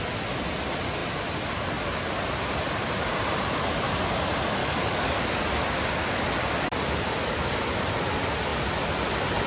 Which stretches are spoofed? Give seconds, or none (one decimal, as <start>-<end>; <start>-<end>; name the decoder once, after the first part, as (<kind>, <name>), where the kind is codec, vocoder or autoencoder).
4.6-5.4 (codec, DAC)